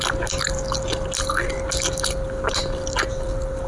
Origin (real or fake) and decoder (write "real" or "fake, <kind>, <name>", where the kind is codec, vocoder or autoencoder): real